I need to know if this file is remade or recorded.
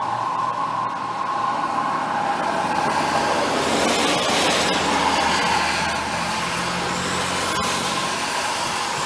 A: recorded